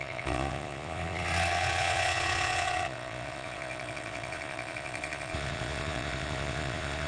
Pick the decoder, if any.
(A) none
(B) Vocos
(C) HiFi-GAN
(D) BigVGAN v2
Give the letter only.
B